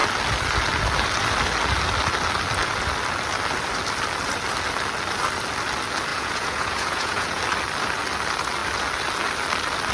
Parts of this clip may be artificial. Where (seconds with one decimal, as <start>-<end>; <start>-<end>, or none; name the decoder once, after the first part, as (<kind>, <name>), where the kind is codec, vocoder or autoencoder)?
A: 6.1-7.4 (vocoder, Vocos)